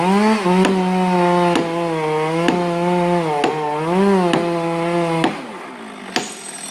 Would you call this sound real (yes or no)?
yes